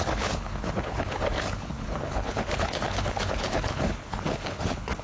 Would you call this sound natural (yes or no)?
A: no